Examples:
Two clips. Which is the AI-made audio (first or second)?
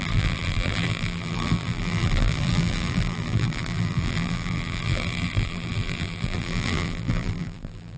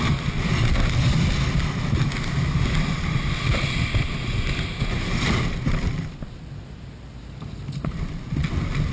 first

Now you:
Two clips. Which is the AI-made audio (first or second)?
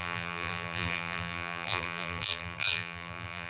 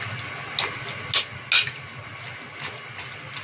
first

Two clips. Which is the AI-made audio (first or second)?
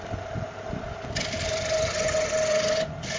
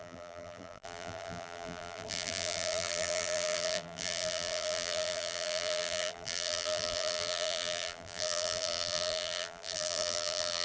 second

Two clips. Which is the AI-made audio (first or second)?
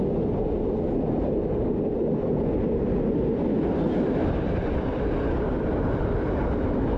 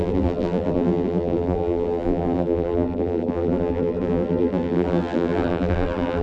second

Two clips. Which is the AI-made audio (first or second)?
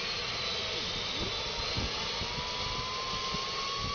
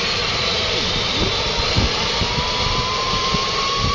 second